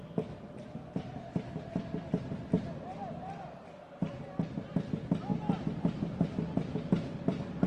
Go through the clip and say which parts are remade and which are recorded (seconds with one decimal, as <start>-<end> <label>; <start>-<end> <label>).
0.0-7.7 recorded